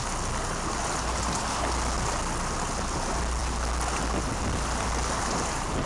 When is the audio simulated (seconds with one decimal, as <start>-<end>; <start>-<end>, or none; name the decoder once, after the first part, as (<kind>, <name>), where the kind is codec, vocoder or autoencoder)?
none